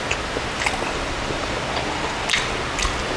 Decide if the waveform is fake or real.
real